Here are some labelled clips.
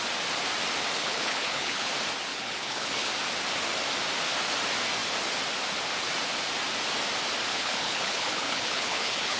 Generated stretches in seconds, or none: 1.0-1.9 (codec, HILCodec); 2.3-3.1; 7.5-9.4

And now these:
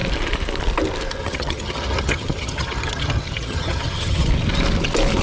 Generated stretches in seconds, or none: 1.2-4.3 (vocoder, HiFi-GAN)

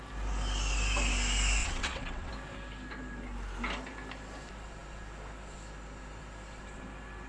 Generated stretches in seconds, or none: 1.6-2.3 (vocoder, WaveNeXt)

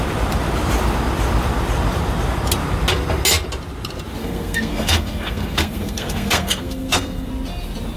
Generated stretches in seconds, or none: 4.2-7.3 (codec, SNAC)